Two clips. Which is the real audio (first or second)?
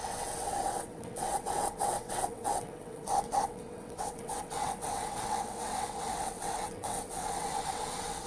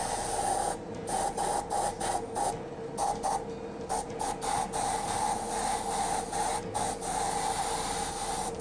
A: second